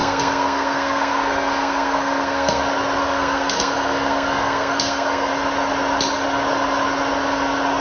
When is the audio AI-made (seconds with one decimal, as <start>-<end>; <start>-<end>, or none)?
0.0-2.6; 3.0-5.3